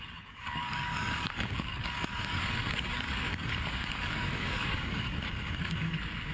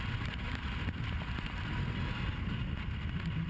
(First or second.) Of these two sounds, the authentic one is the second